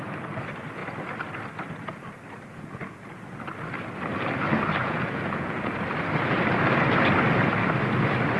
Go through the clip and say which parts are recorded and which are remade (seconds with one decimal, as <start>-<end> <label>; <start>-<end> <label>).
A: 0.0-2.5 recorded; 2.5-3.2 remade; 3.2-4.8 recorded; 4.8-5.7 remade; 5.7-8.4 recorded